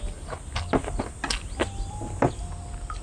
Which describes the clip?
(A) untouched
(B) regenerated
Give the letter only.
A